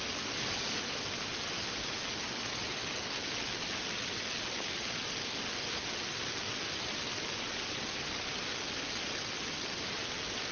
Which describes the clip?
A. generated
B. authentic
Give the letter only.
B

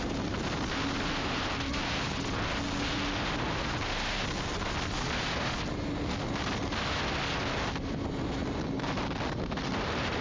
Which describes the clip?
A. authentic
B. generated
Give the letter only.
A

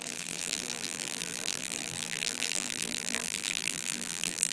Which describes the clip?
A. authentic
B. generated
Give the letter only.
B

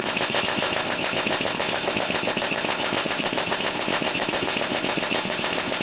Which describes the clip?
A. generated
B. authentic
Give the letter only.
A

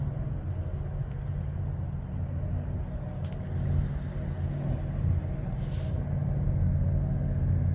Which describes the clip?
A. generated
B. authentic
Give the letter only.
B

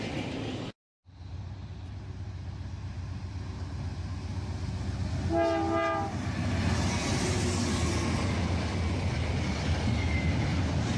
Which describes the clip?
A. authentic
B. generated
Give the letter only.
A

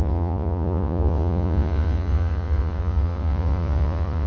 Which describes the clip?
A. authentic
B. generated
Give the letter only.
B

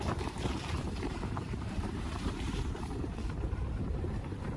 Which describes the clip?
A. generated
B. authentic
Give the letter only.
A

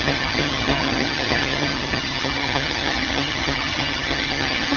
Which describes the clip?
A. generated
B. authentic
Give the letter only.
A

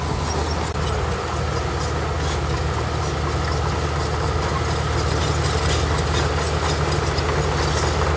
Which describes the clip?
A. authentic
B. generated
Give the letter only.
A